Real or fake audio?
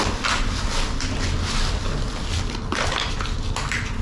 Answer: real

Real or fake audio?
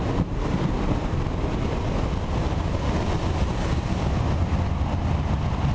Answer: real